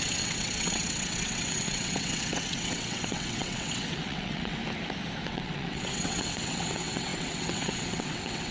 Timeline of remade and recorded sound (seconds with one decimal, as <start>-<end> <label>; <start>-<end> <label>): 0.0-4.6 remade; 4.6-5.3 recorded; 5.3-8.5 remade